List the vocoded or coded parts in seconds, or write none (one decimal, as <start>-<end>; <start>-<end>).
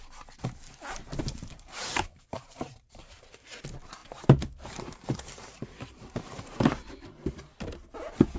1.2-3.6; 4.0-7.3